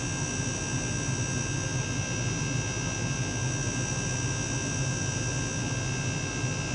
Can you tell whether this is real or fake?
real